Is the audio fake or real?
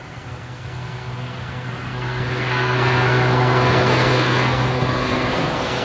fake